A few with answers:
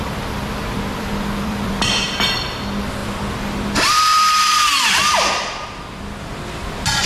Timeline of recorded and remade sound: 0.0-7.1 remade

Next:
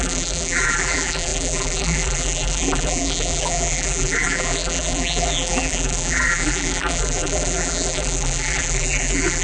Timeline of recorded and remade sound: 0.0-9.4 remade

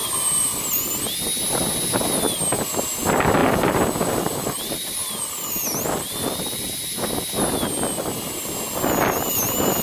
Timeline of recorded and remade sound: 0.0-0.9 remade; 0.9-3.4 recorded; 3.4-6.5 remade; 6.5-9.8 recorded

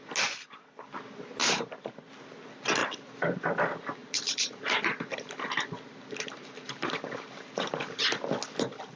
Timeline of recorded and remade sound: 0.0-1.4 recorded; 1.4-2.0 remade; 2.0-2.8 recorded; 2.8-3.4 remade; 3.4-4.0 recorded; 4.0-8.0 remade; 8.0-9.0 recorded